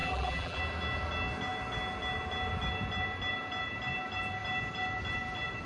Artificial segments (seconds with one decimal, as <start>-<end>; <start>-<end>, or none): 0.0-0.6